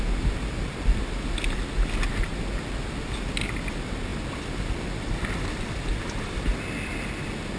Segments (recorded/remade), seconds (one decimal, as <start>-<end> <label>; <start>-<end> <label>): 0.0-7.6 recorded